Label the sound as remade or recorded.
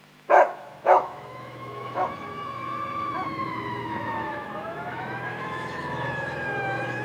remade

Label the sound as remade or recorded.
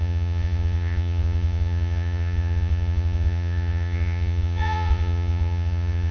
remade